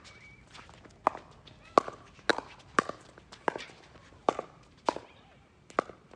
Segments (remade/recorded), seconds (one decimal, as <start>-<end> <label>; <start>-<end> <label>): 0.0-2.3 recorded; 2.3-6.2 remade